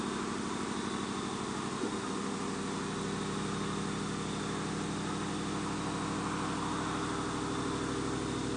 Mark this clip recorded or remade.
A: recorded